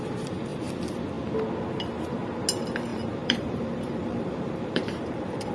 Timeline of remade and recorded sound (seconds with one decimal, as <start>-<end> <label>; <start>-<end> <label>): 0.0-2.9 recorded; 2.9-5.5 remade